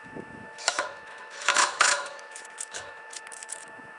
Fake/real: fake